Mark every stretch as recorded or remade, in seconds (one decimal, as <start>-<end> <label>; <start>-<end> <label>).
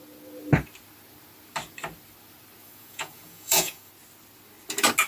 0.0-2.6 recorded; 2.6-3.9 remade; 3.9-5.1 recorded